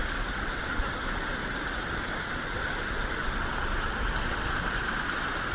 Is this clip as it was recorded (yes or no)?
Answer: yes